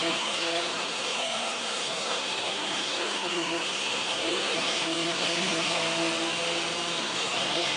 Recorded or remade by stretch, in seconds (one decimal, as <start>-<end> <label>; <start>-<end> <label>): 0.0-5.8 remade; 5.8-7.0 recorded; 7.0-7.8 remade